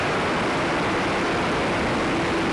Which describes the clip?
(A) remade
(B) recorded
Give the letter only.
B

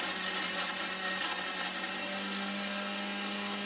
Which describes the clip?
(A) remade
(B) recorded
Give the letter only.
B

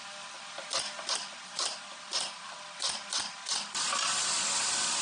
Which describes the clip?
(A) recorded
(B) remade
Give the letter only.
A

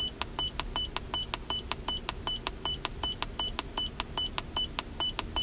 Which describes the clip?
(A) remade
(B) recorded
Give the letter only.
B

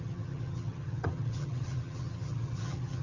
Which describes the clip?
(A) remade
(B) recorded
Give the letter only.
A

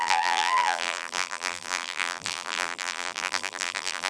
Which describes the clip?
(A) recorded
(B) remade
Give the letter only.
B